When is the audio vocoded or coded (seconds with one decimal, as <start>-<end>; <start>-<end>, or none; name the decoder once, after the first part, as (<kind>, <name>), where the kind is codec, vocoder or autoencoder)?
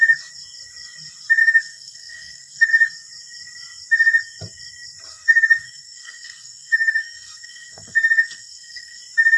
1.4-2.7 (codec, SNAC); 5.1-9.0